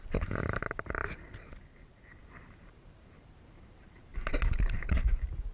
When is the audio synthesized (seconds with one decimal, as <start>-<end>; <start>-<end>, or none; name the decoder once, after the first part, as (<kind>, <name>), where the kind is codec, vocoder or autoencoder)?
0.0-4.1 (vocoder, BigVGAN v2); 4.6-5.5